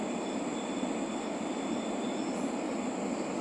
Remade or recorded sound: recorded